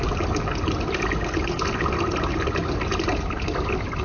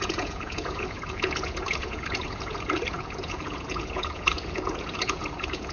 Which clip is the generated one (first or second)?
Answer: second